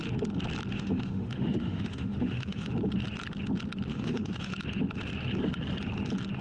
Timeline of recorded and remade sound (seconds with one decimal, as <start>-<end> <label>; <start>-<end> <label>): 0.0-0.7 recorded; 0.7-2.7 remade; 2.7-3.9 recorded; 3.9-4.5 remade; 4.5-6.4 recorded